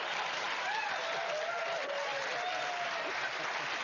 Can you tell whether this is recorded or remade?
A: recorded